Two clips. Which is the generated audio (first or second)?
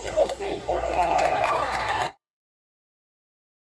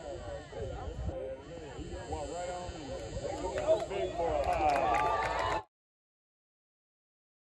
first